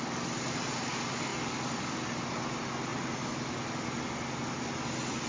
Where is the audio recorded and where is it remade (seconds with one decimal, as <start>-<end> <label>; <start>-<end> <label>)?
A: 0.0-5.3 recorded